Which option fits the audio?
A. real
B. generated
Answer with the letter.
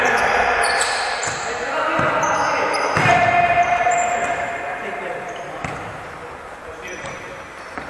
B